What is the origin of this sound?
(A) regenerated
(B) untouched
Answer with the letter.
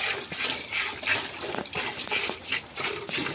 B